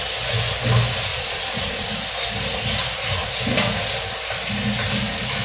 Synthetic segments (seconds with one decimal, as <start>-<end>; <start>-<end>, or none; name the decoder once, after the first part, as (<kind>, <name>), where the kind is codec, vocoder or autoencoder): 1.1-1.9 (vocoder, Vocos)